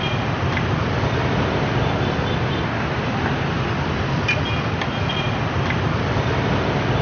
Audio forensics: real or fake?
real